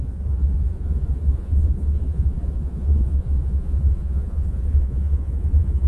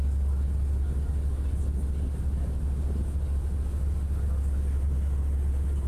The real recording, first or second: second